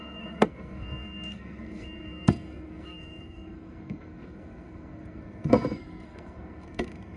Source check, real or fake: fake